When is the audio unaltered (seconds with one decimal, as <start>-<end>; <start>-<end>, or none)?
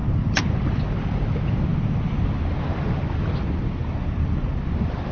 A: 0.8-3.8; 4.6-5.1